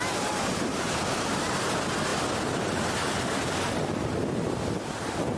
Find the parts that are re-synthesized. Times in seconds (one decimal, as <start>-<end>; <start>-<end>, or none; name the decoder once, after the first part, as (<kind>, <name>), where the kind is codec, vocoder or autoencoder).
0.5-1.7 (vocoder, BigVGAN v2)